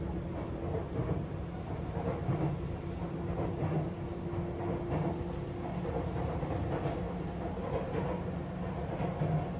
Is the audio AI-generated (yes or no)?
no